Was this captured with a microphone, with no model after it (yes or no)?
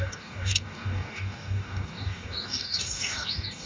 no